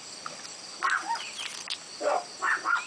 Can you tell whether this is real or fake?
real